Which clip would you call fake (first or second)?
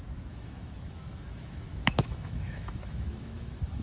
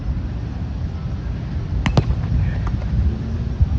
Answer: first